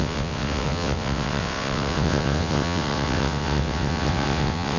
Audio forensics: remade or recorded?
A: remade